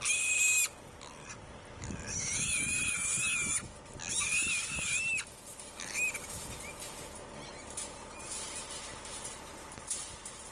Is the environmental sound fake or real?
real